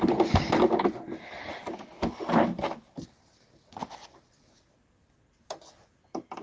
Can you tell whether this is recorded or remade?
recorded